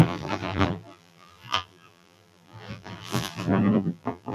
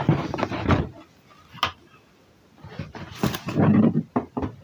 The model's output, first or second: first